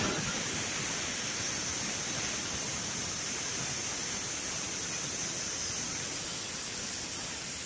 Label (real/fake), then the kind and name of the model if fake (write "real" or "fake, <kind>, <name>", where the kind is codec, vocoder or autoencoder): real